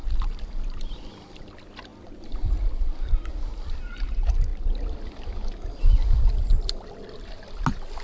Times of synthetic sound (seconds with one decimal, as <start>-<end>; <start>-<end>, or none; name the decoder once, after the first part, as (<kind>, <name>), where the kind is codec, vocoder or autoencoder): 0.0-1.5 (vocoder, BigVGAN v2)